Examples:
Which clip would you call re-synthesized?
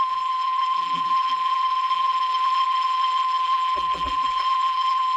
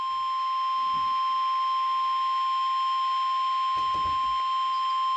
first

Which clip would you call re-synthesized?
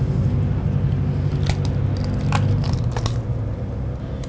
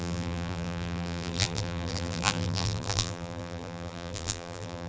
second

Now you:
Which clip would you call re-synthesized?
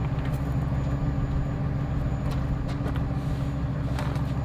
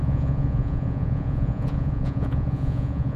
second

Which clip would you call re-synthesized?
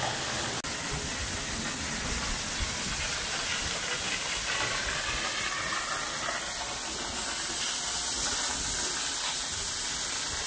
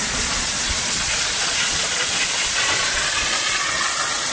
second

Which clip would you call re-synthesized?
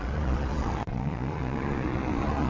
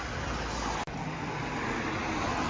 first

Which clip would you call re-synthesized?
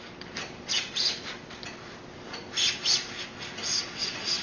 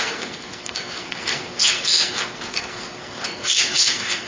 second